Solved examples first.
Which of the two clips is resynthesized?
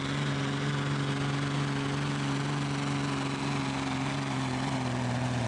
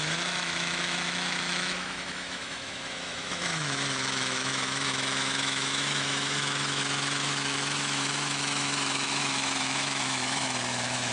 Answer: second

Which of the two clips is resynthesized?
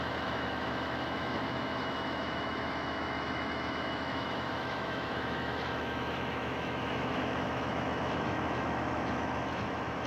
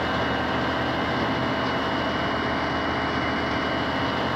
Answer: first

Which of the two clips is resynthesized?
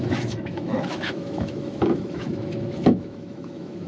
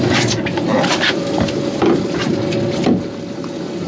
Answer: first